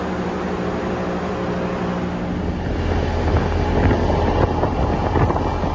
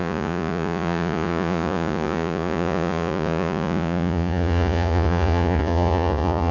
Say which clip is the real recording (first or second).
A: first